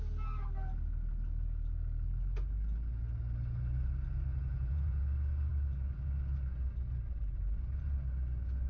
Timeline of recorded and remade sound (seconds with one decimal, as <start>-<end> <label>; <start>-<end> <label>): 0.0-4.3 recorded; 4.3-5.0 remade; 5.0-8.7 recorded